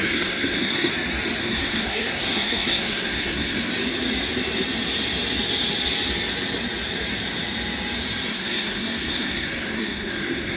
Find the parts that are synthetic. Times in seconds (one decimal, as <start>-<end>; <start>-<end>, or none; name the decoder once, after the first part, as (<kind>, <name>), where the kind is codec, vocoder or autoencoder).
0.0-0.9 (codec, SNAC); 1.4-3.7; 8.3-10.6